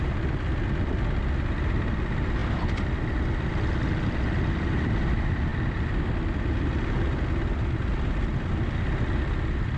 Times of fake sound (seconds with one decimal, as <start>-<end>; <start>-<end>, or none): none

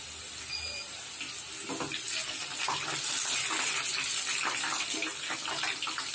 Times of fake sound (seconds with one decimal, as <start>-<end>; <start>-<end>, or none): none

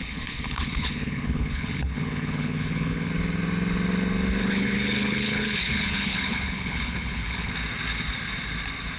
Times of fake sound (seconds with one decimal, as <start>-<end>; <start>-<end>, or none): 0.0-3.1; 4.4-7.5

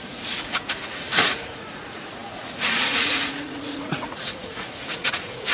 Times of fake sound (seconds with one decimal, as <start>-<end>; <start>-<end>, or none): 0.0-5.5

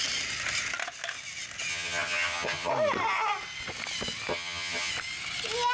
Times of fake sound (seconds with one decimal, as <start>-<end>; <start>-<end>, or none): 1.7-2.7; 4.3-4.9